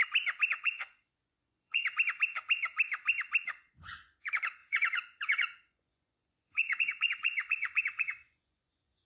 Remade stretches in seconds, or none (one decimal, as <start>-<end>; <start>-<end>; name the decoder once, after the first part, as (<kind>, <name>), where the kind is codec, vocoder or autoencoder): 0.5-1.8 (vocoder, Vocos); 3.4-9.1